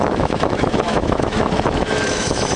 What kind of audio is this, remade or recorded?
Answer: remade